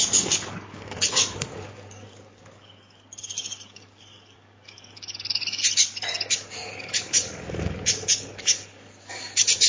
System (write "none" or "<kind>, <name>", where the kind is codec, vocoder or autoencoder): codec, DAC